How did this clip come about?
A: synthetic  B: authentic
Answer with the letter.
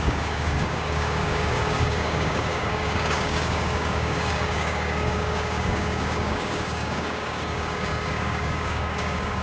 A